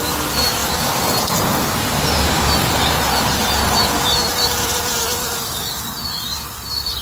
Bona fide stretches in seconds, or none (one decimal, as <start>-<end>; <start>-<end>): 0.0-0.6; 1.2-7.0